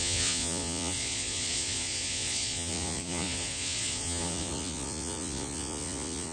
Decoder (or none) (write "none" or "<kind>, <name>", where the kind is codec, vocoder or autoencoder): vocoder, Vocos